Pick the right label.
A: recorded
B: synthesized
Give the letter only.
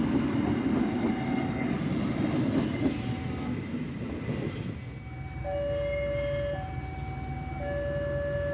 A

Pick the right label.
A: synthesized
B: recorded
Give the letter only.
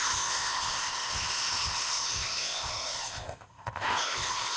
A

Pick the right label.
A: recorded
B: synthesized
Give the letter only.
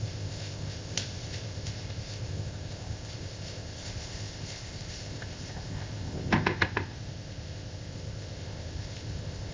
B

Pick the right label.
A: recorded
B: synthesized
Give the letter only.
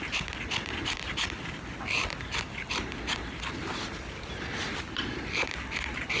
A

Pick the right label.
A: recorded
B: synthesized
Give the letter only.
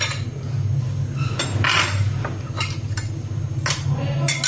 A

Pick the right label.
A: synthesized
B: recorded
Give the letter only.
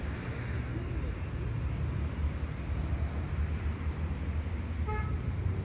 B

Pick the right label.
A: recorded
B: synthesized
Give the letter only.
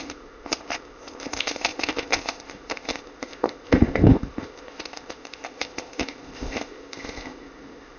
B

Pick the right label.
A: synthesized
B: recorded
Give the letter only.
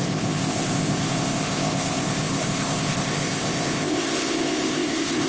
A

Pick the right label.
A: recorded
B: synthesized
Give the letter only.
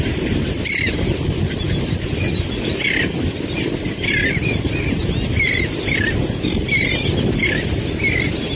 A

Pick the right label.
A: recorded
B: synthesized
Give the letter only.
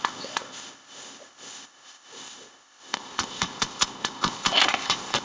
B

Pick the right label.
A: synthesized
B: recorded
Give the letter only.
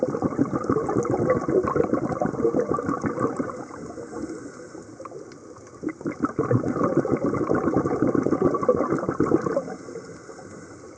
B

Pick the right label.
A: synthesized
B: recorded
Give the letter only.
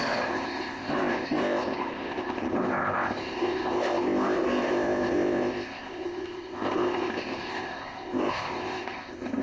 A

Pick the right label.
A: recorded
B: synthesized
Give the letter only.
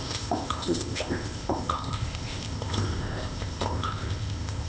B